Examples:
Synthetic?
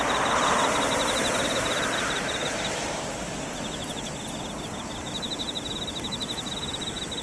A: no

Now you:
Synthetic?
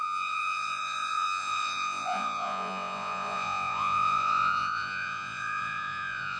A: yes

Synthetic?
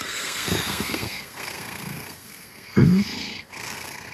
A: yes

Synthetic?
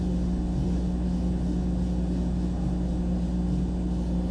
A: no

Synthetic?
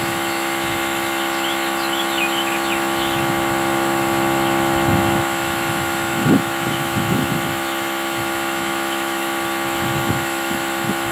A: yes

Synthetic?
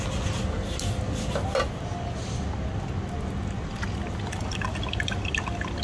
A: no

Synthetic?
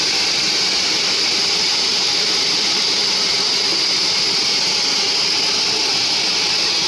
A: no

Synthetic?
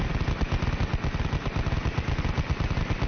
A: no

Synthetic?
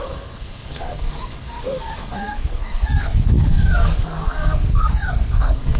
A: yes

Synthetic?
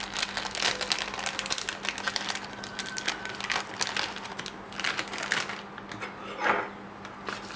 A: no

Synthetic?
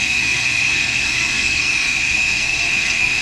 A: yes